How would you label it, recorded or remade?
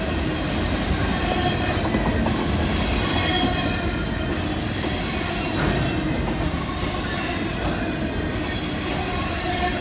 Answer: recorded